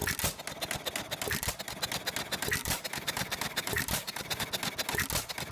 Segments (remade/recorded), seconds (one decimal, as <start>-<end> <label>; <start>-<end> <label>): 0.0-2.6 recorded; 2.6-4.4 remade; 4.4-5.5 recorded